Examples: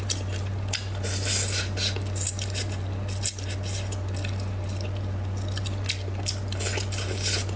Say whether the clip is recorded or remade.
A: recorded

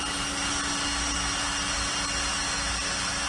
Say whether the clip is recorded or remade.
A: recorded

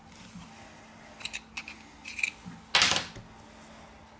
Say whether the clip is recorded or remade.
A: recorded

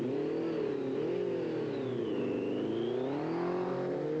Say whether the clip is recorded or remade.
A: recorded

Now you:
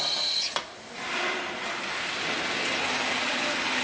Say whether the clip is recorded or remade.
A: recorded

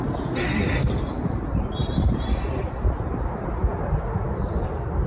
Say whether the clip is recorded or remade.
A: recorded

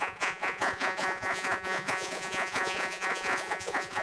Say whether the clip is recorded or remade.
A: remade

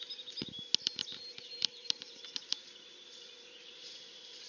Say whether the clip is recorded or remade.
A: recorded